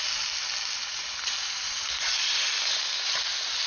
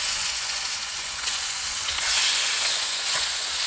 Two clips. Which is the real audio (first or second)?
first